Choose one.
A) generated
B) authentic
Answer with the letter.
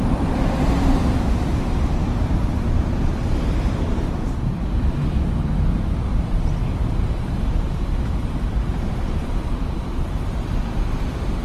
A